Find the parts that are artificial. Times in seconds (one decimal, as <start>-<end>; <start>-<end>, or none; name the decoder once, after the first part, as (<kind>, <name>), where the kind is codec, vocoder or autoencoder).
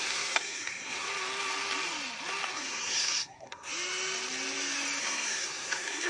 0.0-1.1 (codec, SNAC); 2.5-3.7; 5.0-6.1